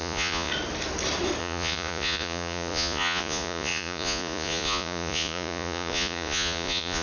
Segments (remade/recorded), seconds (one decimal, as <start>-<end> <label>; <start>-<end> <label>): 0.0-0.5 remade; 0.5-1.4 recorded; 1.4-7.0 remade